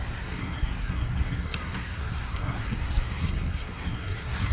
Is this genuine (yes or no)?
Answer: no